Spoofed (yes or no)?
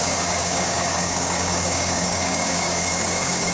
yes